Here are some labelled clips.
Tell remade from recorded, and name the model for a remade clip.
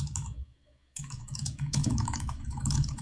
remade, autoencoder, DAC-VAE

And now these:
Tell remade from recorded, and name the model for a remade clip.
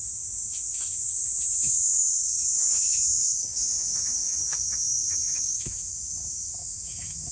remade, autoencoder, DAC-VAE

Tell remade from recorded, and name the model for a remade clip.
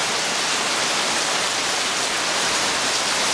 recorded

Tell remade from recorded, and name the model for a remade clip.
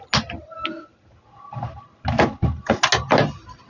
recorded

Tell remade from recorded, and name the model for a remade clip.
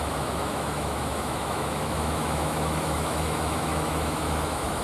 remade, autoencoder, DAC-VAE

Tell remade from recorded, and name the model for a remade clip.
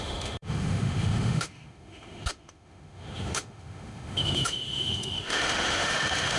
remade, autoencoder, DAC-VAE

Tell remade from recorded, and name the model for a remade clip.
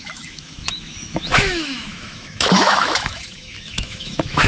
remade, autoencoder, DAC-VAE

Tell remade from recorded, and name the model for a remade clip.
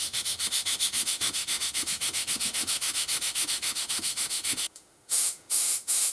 remade, autoencoder, DAC-VAE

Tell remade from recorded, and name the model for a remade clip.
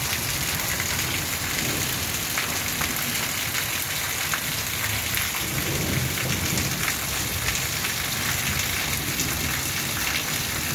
recorded